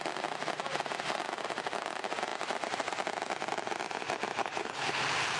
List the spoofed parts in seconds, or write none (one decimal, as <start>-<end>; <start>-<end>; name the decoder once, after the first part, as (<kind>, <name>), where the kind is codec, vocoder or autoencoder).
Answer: 4.4-5.0 (codec, HILCodec)